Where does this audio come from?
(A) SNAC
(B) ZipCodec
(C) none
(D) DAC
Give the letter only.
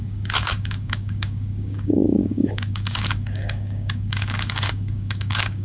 D